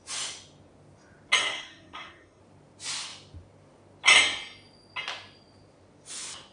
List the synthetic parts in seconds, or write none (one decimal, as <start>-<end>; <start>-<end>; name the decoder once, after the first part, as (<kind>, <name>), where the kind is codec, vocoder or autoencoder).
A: 1.4-2.4 (codec, SNAC)